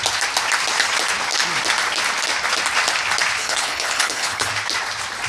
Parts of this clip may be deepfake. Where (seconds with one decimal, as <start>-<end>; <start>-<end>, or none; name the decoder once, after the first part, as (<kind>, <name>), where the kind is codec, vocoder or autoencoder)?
3.4-4.5 (codec, HILCodec)